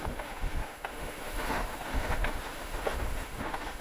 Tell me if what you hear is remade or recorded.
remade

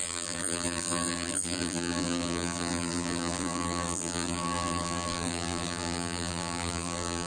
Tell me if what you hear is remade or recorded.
remade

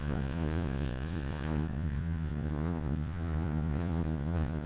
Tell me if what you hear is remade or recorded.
remade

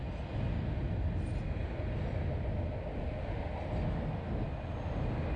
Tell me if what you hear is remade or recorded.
recorded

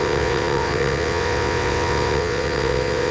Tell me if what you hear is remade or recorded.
remade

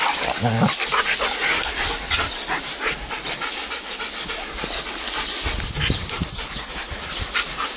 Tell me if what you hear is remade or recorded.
recorded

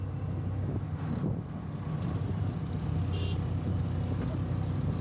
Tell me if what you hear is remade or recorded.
recorded